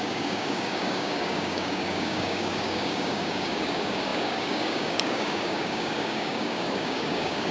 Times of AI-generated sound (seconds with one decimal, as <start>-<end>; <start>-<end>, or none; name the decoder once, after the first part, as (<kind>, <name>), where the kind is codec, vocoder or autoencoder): 0.0-7.5 (codec, DAC)